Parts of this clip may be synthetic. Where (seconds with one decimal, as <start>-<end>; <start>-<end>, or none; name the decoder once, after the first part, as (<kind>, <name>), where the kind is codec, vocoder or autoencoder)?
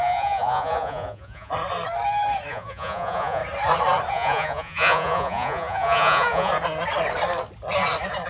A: 0.0-1.5 (vocoder, Vocos); 2.5-3.4; 4.1-6.5